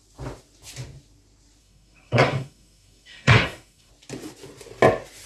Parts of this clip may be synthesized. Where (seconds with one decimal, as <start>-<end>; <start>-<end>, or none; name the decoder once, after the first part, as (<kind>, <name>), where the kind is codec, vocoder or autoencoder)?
1.6-3.9 (codec, SNAC)